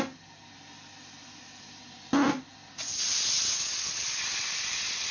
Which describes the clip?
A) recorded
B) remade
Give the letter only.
A